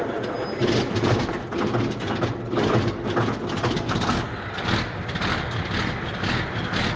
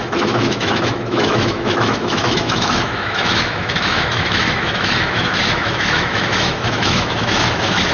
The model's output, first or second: second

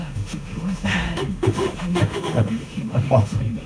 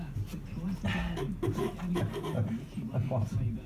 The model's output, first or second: first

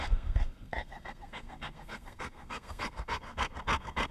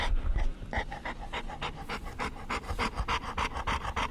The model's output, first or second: first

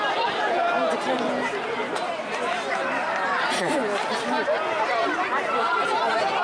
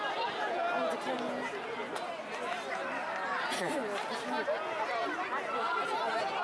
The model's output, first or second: first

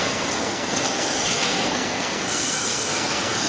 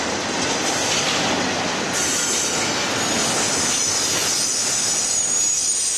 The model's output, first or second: first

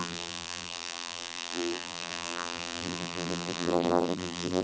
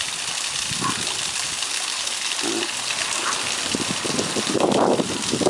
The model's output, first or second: first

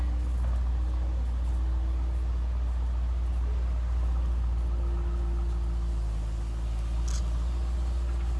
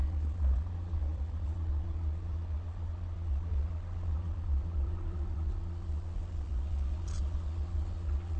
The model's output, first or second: second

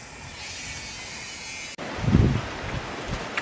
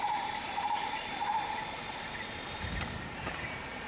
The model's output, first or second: second